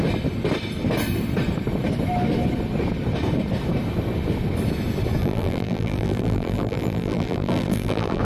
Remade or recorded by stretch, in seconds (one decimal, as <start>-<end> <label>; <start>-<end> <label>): 0.0-5.2 recorded; 5.2-8.2 remade